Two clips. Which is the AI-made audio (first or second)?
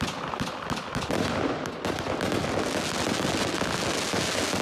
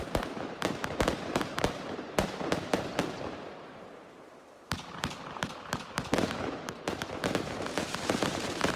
second